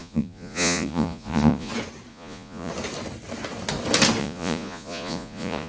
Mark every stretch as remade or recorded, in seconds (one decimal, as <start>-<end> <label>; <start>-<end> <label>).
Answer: 0.0-1.7 remade; 1.7-2.1 recorded; 2.1-2.7 remade; 2.7-4.2 recorded; 4.2-5.7 remade